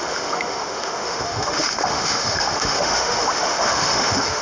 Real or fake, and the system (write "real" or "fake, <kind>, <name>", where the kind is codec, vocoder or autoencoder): fake, autoencoder, DAC-VAE